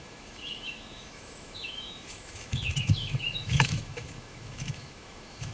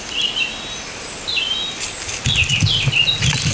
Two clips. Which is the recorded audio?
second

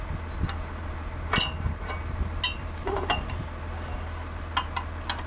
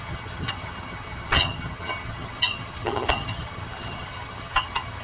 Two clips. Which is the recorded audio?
first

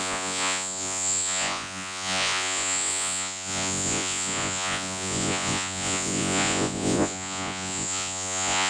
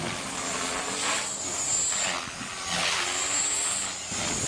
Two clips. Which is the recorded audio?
second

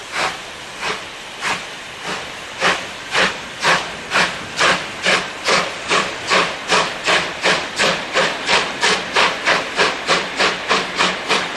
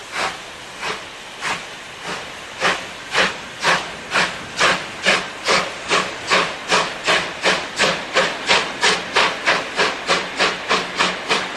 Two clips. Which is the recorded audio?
second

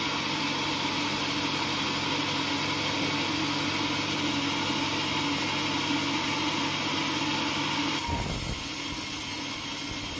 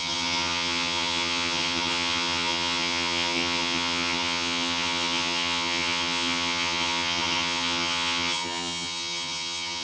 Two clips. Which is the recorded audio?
first